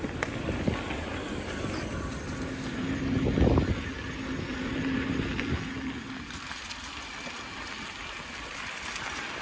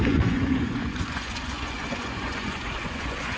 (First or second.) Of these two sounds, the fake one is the second